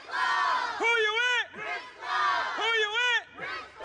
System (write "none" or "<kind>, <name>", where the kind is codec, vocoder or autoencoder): none